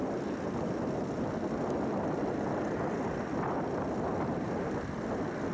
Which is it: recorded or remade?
recorded